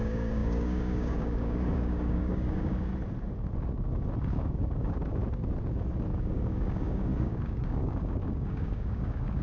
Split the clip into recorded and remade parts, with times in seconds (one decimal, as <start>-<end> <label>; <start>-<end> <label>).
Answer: 0.0-2.9 remade; 2.9-4.2 recorded; 4.2-5.2 remade; 5.2-6.1 recorded; 6.1-9.4 remade

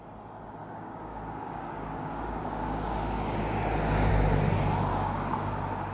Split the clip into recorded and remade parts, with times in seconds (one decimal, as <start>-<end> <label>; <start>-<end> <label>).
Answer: 0.0-0.6 recorded; 0.6-4.1 remade; 4.1-4.9 recorded; 4.9-5.5 remade; 5.5-5.9 recorded

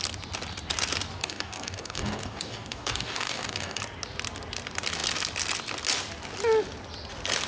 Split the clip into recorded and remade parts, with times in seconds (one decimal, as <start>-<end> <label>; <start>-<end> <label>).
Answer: 0.0-1.2 recorded; 1.2-3.8 remade; 3.8-7.5 recorded